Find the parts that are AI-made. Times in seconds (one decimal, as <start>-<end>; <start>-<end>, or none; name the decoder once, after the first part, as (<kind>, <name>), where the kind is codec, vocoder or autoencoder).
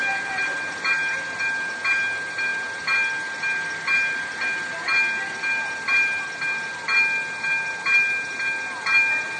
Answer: none